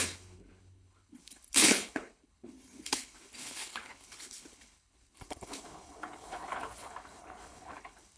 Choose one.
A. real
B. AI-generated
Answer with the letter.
B